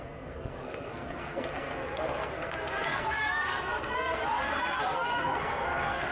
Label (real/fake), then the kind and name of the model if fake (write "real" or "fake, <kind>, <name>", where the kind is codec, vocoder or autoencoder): fake, codec, SNAC